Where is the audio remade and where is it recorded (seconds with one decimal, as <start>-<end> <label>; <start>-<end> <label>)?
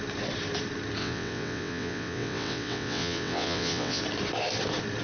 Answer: 0.0-1.0 recorded; 1.0-4.0 remade; 4.0-5.0 recorded